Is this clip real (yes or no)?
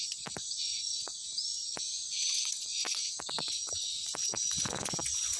no